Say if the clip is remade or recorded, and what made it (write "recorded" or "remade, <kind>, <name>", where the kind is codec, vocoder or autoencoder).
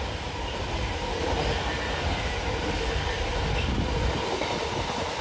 recorded